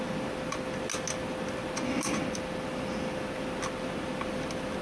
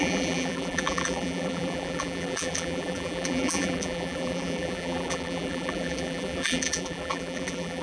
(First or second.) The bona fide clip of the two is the first